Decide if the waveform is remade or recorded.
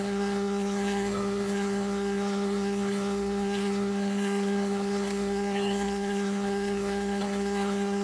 remade